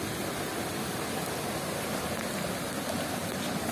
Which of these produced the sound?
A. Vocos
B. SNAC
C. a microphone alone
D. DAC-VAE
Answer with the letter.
C